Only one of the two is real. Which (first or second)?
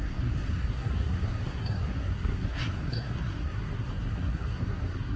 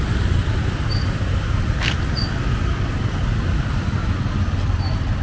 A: second